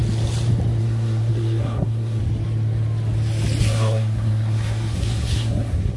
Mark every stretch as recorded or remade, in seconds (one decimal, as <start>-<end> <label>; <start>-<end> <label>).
0.0-0.8 recorded; 0.8-2.2 remade; 2.2-3.6 recorded; 3.6-6.0 remade

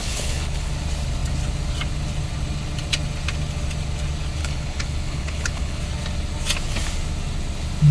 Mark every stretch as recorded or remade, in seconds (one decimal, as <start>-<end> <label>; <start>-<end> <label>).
0.0-0.7 remade; 0.7-4.4 recorded; 4.4-5.8 remade; 5.8-7.9 recorded

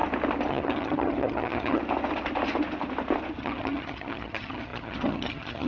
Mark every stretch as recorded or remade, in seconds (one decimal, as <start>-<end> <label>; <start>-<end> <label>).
0.0-0.5 recorded; 0.5-1.8 remade; 1.8-3.4 recorded; 3.4-5.7 remade